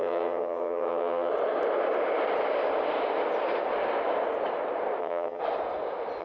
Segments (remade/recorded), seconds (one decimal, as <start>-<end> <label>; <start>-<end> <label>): 0.0-1.3 remade; 1.3-5.0 recorded; 5.0-5.4 remade; 5.4-6.2 recorded